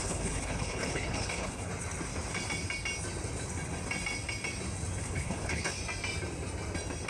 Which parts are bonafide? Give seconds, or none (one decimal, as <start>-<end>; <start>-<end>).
1.7-5.0; 5.8-7.1